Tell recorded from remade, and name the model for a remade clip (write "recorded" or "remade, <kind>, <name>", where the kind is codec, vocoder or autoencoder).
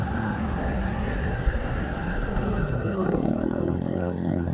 remade, codec, SNAC